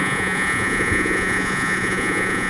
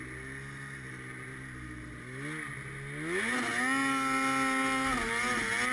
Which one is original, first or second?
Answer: second